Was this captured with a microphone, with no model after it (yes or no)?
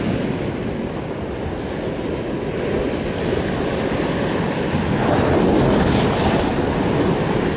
yes